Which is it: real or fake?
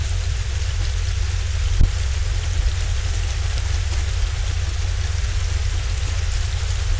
real